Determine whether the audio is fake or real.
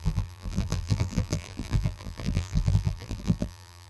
fake